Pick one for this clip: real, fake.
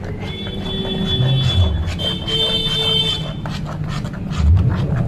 real